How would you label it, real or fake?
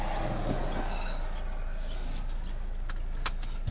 real